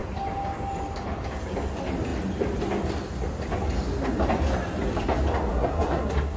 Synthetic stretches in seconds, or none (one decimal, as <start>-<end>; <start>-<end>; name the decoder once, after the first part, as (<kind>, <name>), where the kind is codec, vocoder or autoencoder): 5.5-6.4 (codec, SNAC)